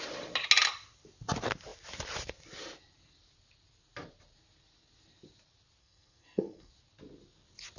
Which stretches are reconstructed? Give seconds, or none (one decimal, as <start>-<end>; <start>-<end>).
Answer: 5.8-6.7